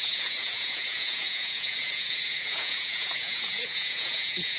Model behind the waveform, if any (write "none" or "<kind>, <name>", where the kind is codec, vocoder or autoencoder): vocoder, Vocos